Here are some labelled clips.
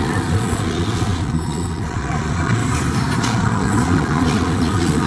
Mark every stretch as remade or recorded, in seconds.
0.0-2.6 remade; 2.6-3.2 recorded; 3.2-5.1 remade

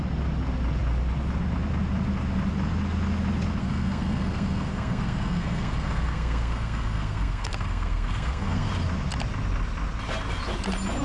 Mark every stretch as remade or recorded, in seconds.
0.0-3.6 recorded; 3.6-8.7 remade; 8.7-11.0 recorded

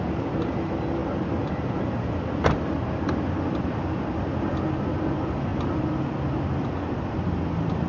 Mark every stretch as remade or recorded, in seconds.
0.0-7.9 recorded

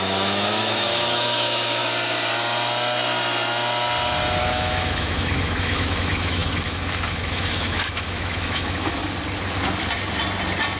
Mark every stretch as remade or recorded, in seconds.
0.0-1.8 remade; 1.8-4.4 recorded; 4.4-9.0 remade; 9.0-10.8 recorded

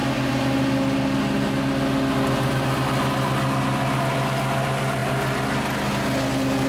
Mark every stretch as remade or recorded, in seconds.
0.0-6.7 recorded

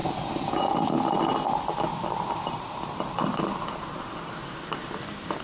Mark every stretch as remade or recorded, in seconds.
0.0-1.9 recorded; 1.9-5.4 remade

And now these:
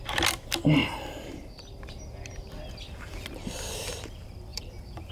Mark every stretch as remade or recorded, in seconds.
0.0-0.8 recorded; 0.8-1.8 remade; 1.8-4.5 recorded; 4.5-5.1 remade

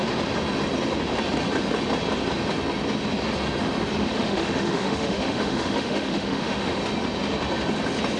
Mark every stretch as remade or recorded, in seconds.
0.0-4.0 recorded; 4.0-6.8 remade; 6.8-8.2 recorded